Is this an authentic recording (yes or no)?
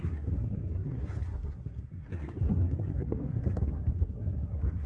no